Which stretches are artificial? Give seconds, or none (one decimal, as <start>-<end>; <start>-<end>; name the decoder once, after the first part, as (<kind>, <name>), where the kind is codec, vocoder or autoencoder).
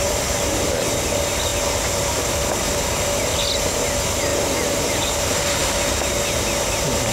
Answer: none